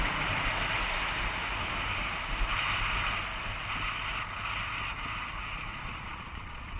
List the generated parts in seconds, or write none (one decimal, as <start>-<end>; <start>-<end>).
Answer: 5.7-6.8